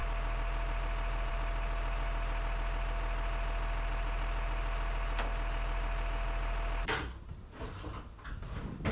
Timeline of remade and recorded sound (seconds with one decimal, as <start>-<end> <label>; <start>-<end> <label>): 0.0-8.9 recorded